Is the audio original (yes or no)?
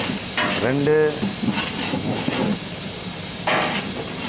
yes